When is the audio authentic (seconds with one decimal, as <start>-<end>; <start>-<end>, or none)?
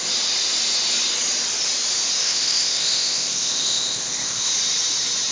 0.0-2.2; 4.5-5.3